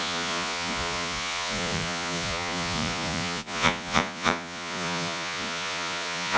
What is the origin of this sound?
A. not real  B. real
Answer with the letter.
A